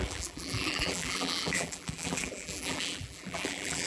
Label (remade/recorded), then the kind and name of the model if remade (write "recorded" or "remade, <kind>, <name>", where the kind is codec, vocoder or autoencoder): remade, vocoder, BigVGAN v2